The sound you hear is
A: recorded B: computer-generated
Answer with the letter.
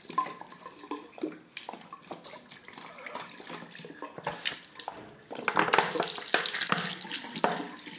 A